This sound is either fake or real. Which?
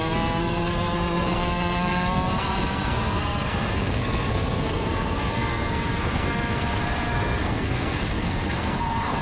fake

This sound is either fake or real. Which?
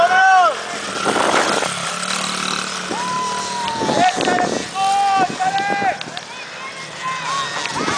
real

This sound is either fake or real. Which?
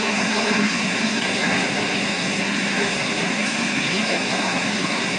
fake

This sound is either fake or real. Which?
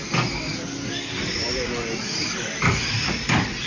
real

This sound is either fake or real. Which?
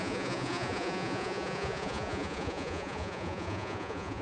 fake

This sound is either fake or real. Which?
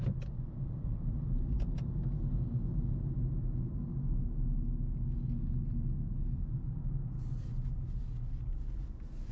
real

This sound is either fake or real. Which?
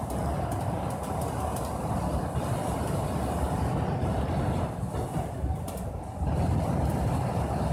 real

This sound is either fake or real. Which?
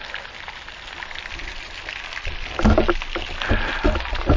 real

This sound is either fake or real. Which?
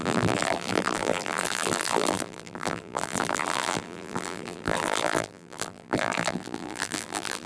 fake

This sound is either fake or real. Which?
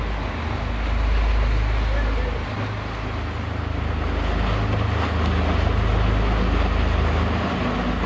real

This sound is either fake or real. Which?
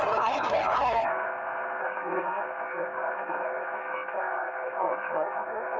fake